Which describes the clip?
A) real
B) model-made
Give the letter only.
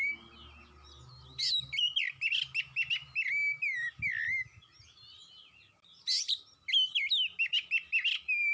A